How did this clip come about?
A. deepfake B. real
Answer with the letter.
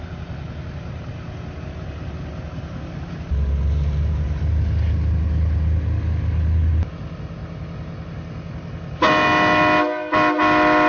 B